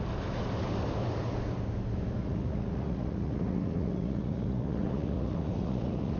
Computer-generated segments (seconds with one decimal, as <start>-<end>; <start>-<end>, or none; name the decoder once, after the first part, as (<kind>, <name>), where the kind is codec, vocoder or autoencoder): 2.2-6.2 (vocoder, Vocos)